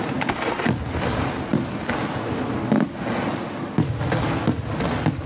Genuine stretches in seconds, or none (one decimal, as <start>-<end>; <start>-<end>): 0.0-5.3